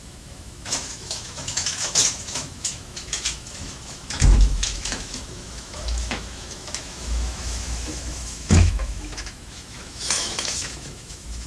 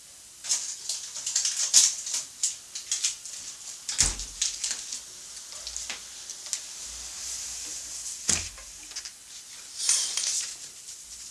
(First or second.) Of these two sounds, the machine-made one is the first